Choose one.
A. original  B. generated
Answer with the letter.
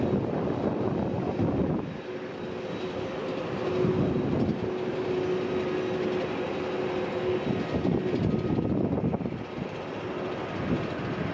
A